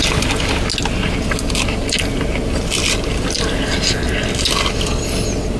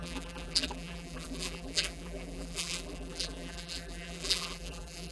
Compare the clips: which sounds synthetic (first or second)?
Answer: second